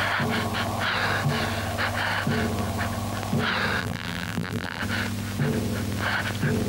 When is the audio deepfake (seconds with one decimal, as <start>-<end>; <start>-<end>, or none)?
3.8-4.8